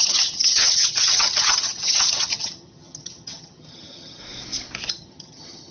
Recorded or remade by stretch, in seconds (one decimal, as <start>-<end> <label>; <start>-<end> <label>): 0.0-4.2 remade; 4.2-4.9 recorded; 4.9-5.7 remade